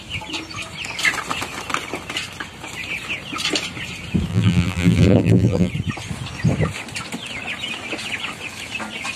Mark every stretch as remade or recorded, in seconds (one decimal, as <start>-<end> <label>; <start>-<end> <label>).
0.0-4.3 recorded; 4.3-5.7 remade; 5.7-9.2 recorded